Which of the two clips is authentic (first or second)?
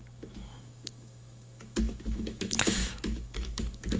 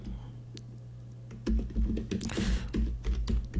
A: second